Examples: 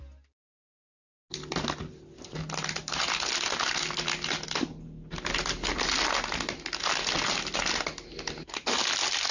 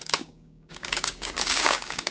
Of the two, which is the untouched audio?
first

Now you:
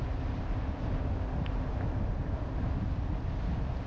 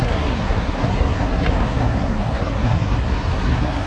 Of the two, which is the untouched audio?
first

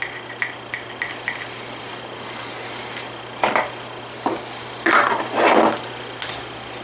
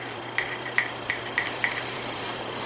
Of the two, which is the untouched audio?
first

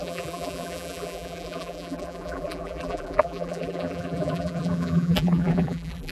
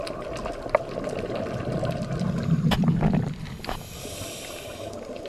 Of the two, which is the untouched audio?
second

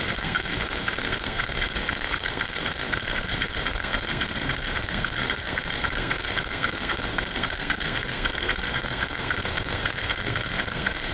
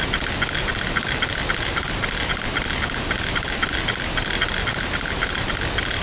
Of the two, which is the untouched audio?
second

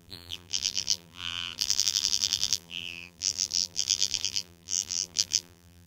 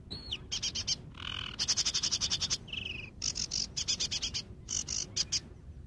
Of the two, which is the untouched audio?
second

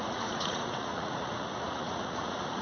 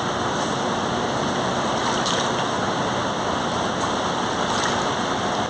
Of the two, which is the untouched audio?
second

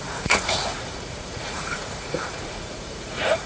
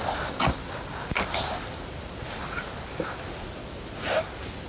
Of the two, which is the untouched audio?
second